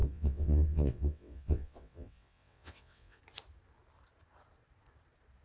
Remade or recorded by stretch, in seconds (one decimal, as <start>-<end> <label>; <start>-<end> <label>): 0.0-3.2 remade; 3.2-5.4 recorded